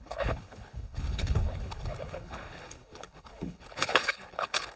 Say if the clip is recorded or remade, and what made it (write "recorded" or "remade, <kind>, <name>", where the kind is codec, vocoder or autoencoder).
remade, codec, HILCodec